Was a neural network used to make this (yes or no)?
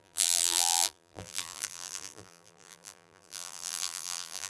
yes